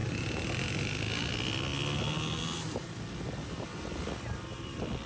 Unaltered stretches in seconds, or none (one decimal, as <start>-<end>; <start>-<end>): 0.0-5.1